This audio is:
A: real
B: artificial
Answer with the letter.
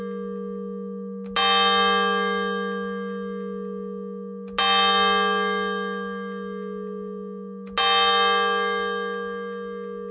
A